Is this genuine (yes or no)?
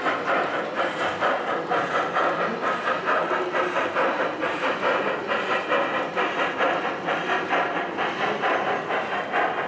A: yes